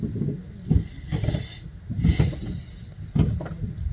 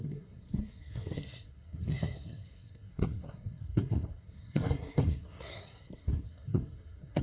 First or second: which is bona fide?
first